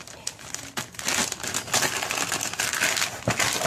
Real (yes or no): yes